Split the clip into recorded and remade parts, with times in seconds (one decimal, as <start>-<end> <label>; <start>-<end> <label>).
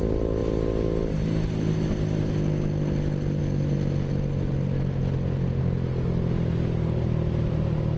0.0-8.0 recorded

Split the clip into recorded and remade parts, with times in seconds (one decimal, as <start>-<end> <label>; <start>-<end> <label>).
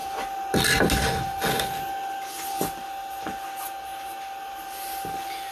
0.0-5.5 recorded